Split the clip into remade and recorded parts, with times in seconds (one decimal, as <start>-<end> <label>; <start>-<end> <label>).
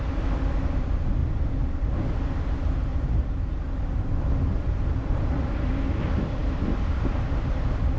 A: 0.0-2.9 recorded; 2.9-5.7 remade; 5.7-8.0 recorded